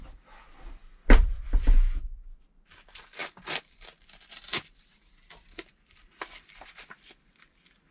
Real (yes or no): yes